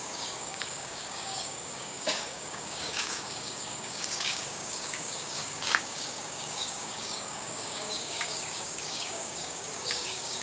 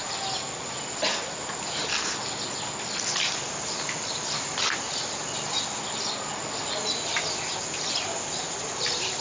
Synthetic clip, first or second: first